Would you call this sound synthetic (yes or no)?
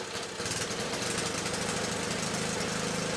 no